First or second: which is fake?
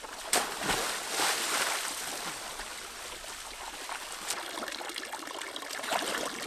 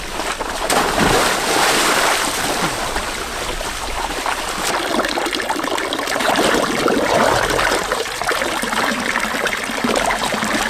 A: second